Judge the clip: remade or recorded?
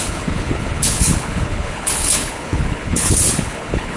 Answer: remade